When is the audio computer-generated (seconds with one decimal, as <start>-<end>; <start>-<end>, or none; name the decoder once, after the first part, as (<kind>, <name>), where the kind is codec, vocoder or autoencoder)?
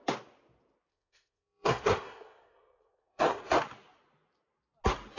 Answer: 0.9-3.4 (codec, SNAC)